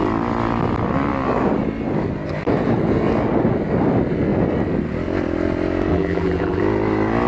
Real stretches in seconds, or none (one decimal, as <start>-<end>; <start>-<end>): 0.0-5.9; 6.6-7.3